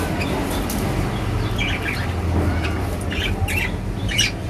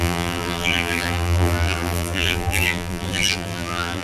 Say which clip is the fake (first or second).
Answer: second